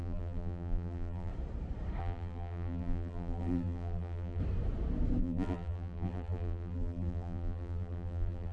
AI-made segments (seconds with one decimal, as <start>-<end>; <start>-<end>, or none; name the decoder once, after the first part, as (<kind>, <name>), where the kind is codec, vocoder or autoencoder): 0.0-1.3 (vocoder, BigVGAN v2); 2.0-4.4; 5.2-8.5